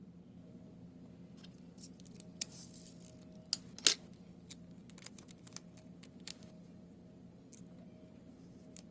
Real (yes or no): yes